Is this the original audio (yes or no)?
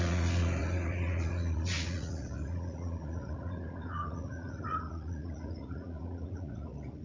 no